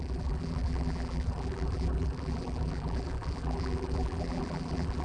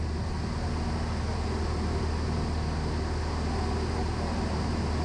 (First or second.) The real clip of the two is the second